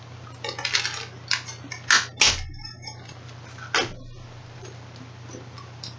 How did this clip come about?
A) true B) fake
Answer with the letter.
A